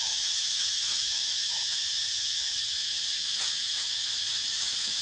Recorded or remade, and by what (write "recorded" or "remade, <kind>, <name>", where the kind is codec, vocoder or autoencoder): remade, autoencoder, DAC-VAE